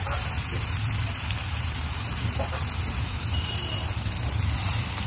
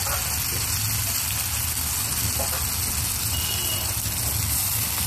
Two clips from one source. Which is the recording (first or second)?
second